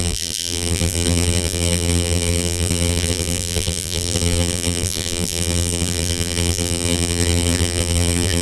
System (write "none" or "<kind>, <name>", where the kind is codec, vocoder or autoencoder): vocoder, BigVGAN v2